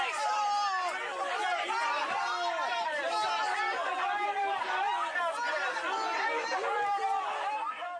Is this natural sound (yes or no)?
yes